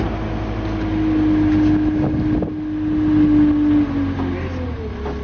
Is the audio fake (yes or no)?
no